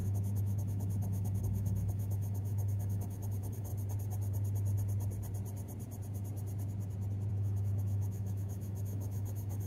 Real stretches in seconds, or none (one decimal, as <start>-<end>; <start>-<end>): 3.7-7.3